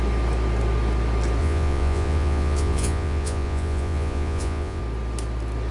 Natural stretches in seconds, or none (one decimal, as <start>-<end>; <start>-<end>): 0.0-1.4; 4.8-5.7